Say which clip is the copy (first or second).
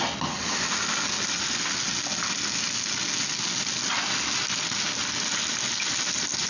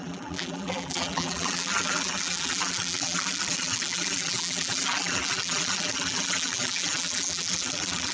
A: second